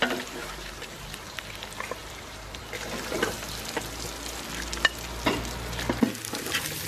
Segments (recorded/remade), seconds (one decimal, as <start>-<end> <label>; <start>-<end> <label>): 0.0-0.4 recorded; 0.4-1.4 remade; 1.4-2.0 recorded; 2.0-2.6 remade; 2.6-6.9 recorded